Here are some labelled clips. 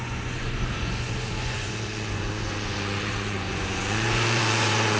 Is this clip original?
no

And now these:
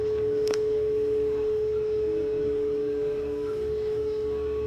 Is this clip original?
no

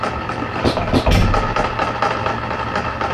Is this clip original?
yes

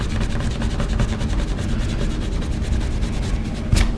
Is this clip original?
yes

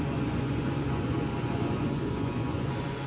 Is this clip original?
no